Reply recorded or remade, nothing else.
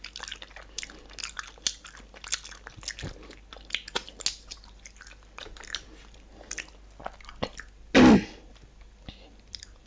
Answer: recorded